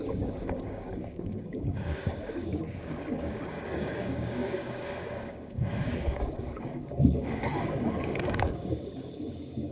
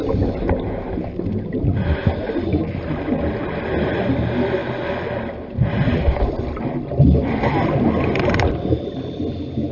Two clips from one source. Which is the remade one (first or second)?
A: first